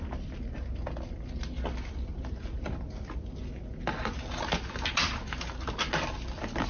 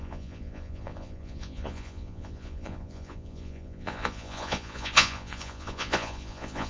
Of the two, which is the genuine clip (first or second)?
first